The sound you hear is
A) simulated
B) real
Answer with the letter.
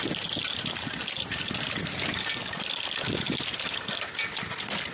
B